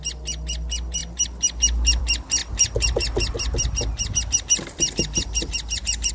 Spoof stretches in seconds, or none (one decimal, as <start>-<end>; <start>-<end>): none